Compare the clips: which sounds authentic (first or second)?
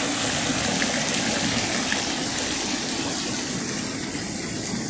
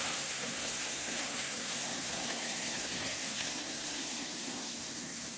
first